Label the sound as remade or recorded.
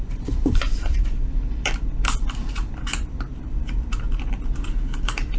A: remade